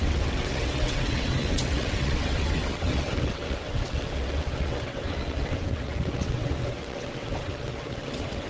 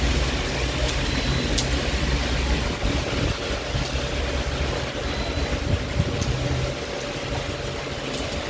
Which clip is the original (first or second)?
second